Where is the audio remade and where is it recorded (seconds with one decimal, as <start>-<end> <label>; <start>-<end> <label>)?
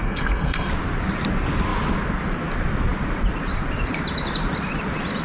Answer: 0.0-0.7 remade; 0.7-5.2 recorded